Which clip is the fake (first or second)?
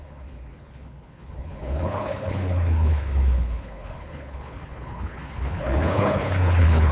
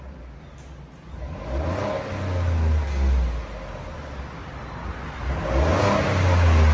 first